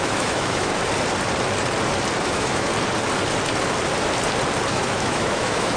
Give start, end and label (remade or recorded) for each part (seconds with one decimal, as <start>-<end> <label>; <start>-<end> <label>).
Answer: 0.0-0.7 remade; 0.7-2.2 recorded; 2.2-2.7 remade; 2.7-4.7 recorded; 4.7-5.8 remade